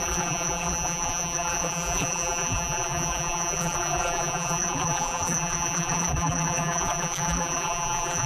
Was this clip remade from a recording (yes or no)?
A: yes